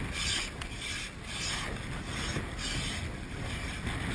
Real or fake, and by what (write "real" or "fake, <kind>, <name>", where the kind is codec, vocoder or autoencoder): real